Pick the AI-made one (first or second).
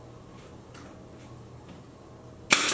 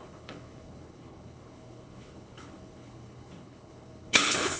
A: second